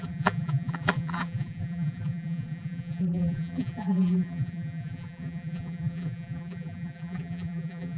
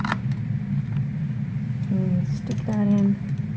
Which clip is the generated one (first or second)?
first